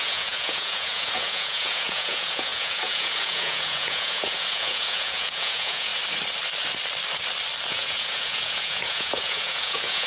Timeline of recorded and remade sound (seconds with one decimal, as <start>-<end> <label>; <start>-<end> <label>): 0.0-5.9 remade; 5.9-7.7 recorded; 7.7-10.1 remade